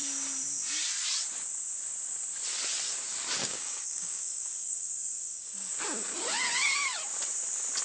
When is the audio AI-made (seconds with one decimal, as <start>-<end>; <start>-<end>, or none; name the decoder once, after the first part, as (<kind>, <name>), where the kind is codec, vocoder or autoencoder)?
3.4-5.7 (codec, DAC)